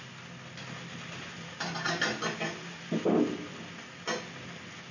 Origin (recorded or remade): recorded